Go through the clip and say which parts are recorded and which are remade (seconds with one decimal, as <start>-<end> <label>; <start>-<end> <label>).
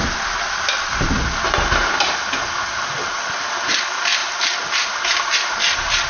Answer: 0.0-4.2 recorded; 4.2-5.3 remade; 5.3-6.1 recorded